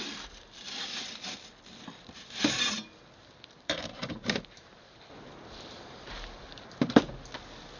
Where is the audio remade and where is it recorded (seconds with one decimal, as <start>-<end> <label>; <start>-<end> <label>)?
0.0-3.2 recorded; 3.2-7.1 remade; 7.1-7.8 recorded

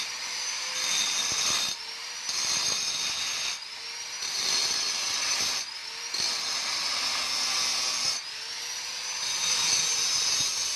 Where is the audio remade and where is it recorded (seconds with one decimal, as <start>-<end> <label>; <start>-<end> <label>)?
0.0-10.8 remade

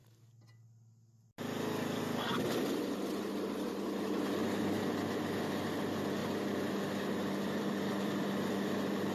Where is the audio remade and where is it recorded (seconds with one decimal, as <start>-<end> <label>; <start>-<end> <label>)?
0.0-6.2 recorded; 6.2-8.2 remade; 8.2-9.1 recorded

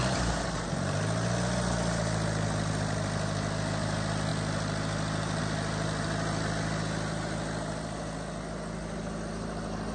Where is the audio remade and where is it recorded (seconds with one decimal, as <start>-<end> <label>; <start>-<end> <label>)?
0.0-9.9 recorded